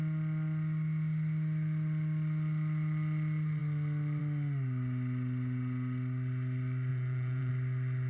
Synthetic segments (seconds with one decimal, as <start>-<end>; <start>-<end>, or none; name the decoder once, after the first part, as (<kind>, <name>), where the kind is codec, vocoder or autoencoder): 6.9-7.5 (vocoder, Vocos)